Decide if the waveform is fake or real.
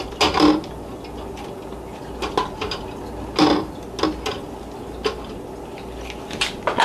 real